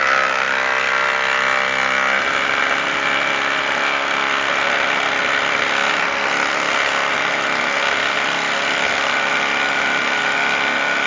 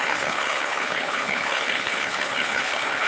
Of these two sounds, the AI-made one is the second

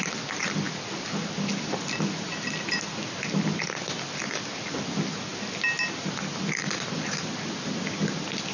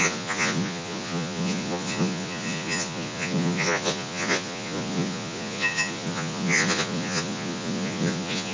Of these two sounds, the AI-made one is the second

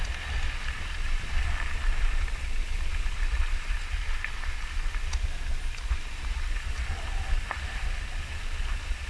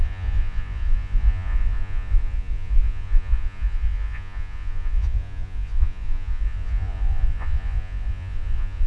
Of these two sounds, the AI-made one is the second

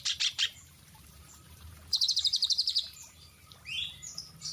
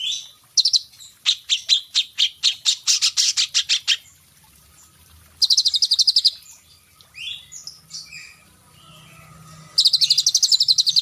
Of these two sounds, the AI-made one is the first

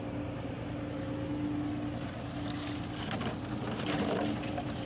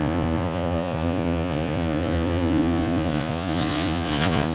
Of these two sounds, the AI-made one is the second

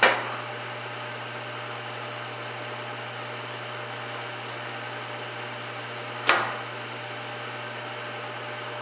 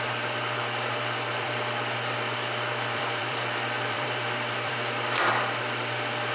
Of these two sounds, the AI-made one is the second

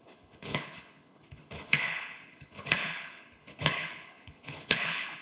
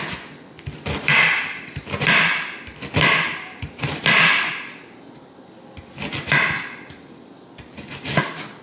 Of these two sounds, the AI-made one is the first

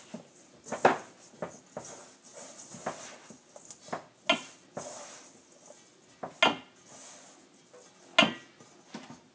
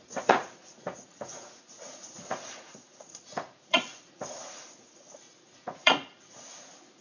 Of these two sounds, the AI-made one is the second